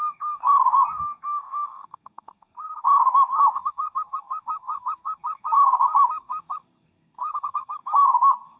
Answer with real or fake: fake